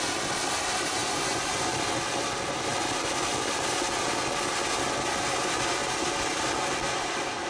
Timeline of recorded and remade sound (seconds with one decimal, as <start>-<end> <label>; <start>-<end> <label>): 0.0-1.0 recorded; 1.0-1.7 remade; 1.7-7.5 recorded